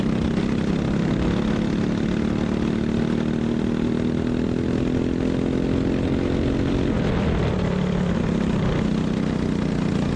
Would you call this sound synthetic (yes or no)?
no